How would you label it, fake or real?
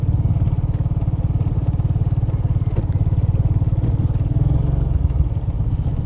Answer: real